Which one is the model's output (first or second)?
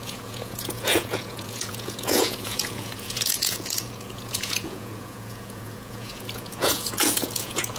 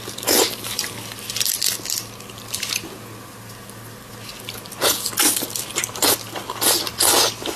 first